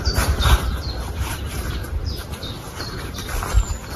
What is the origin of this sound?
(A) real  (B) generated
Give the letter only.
B